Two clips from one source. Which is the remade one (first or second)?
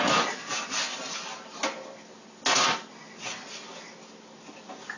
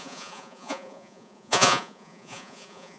second